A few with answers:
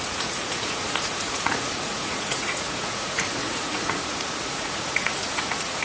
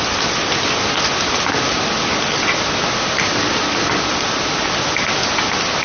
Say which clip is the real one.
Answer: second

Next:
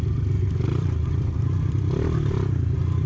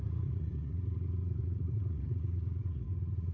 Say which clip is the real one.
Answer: first